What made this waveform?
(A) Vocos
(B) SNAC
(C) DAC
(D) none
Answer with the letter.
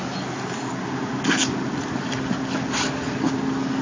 D